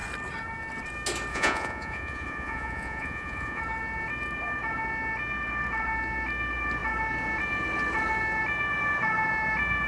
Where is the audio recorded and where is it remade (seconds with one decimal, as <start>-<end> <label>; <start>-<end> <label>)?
0.0-1.3 recorded; 1.3-3.6 remade; 3.6-9.9 recorded